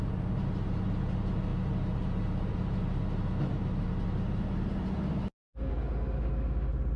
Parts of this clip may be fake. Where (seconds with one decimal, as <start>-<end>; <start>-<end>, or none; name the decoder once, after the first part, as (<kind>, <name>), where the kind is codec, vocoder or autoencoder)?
none